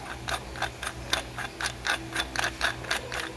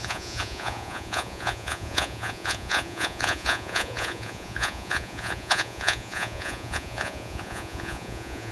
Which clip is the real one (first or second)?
first